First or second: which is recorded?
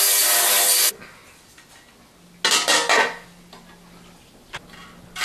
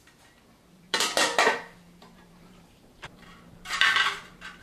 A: first